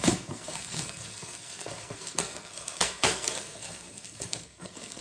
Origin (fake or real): fake